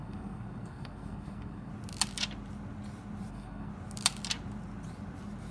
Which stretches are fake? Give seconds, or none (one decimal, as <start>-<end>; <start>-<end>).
0.0-1.7; 3.3-3.7